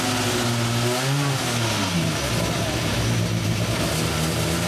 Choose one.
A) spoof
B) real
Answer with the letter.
B